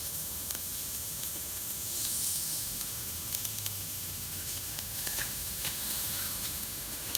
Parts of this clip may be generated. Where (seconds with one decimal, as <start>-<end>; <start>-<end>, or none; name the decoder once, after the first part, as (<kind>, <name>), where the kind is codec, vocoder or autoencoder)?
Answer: 0.0-7.2 (autoencoder, DAC-VAE)